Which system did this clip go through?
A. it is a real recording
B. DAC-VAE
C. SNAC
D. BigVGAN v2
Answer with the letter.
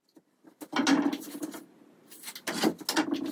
A